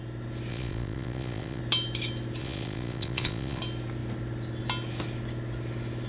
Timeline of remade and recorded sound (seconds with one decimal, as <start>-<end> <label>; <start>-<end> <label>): 0.0-0.5 recorded; 0.5-1.6 remade; 1.6-2.4 recorded; 2.4-3.6 remade; 3.6-6.1 recorded